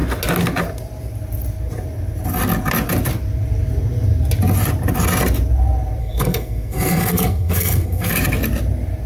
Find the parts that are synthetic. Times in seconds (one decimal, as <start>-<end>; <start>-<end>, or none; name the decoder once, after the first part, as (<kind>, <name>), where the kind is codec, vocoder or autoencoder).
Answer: 6.0-8.1 (codec, SNAC)